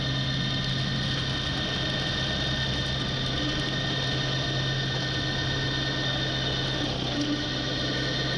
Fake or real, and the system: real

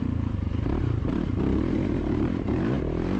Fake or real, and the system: fake, vocoder, BigVGAN v2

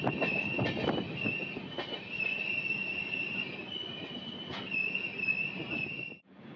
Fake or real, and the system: real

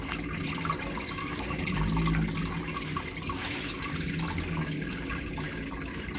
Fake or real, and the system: real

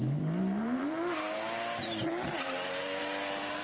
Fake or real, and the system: fake, vocoder, BigVGAN v2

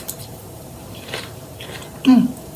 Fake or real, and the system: fake, vocoder, BigVGAN v2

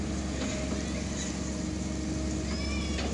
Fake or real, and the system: real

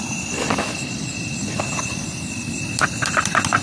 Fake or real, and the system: real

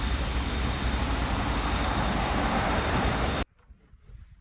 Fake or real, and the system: fake, vocoder, BigVGAN v2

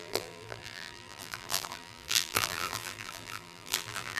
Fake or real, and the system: fake, vocoder, BigVGAN v2